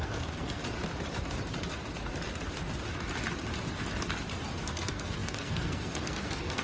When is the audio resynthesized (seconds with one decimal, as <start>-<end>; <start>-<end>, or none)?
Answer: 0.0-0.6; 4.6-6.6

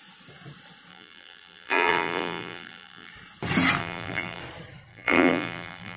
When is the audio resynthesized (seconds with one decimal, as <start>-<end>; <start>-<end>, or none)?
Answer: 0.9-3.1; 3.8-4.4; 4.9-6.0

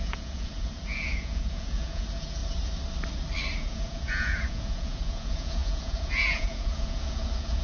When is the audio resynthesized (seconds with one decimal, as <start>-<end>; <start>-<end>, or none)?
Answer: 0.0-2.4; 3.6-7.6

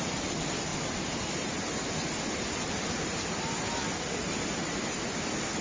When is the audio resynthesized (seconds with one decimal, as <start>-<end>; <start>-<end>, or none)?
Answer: none

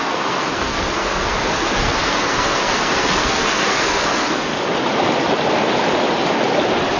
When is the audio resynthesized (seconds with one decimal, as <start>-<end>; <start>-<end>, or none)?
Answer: 0.0-4.5

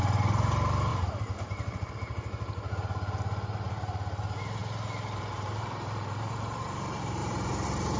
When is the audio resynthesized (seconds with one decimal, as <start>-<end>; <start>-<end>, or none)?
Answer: 0.9-1.9; 4.6-6.4; 7.2-8.0

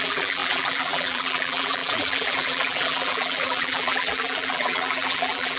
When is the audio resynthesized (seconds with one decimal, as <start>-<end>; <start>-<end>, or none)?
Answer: 0.0-5.6

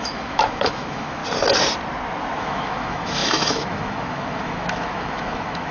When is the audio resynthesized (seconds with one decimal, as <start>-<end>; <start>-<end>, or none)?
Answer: 0.0-1.2; 2.4-5.7